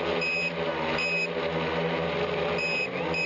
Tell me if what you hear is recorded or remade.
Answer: recorded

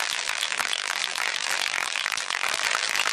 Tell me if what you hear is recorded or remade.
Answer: remade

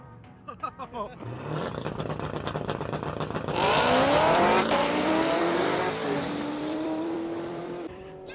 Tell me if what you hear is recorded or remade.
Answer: remade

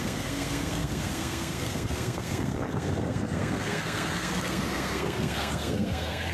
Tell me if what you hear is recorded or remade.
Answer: remade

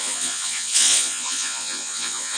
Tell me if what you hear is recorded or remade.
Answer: remade